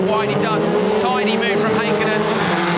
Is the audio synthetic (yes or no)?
no